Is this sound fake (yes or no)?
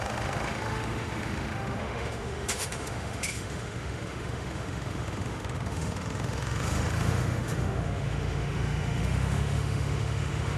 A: yes